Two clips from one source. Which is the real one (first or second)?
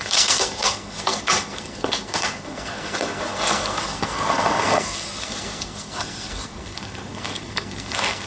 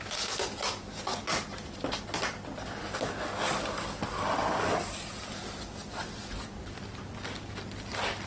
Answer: second